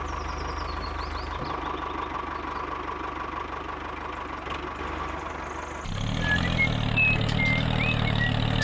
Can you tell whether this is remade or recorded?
recorded